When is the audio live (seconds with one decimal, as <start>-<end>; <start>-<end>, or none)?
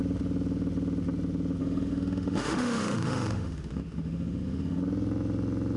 0.0-1.6; 4.8-5.8